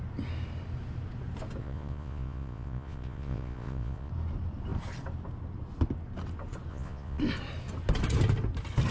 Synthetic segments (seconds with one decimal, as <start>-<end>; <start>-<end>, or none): 1.6-4.1; 6.7-7.2